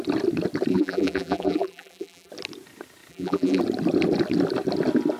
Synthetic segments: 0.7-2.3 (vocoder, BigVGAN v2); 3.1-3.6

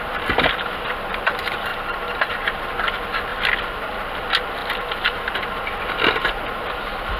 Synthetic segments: 1.7-2.5 (vocoder, BigVGAN v2); 4.6-5.8